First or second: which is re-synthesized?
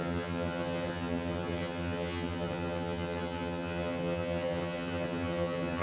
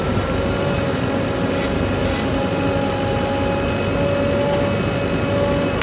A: first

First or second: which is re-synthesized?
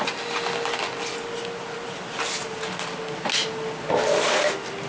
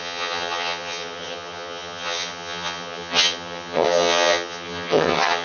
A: second